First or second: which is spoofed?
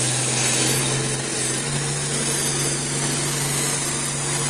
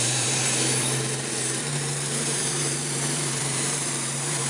second